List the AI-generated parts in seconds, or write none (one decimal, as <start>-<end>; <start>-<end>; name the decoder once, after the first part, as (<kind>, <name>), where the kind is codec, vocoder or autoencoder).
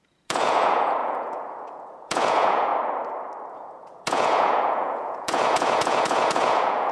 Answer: 0.0-2.7 (vocoder, Vocos); 3.5-6.9